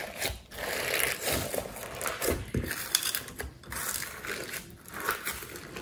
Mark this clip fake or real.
fake